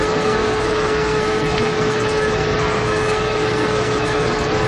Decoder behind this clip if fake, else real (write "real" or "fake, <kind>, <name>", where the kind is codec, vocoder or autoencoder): fake, codec, SNAC